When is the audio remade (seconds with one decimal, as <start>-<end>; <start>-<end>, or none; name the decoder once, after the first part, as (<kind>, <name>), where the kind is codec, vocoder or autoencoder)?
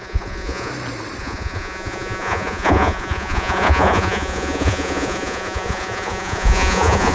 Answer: 0.0-0.7 (vocoder, Vocos); 1.2-7.1